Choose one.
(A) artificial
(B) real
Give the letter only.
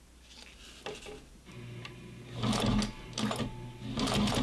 B